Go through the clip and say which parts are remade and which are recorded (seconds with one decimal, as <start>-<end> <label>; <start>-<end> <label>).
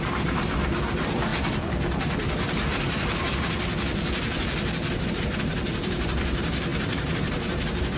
0.0-1.3 remade; 1.3-5.1 recorded; 5.1-8.0 remade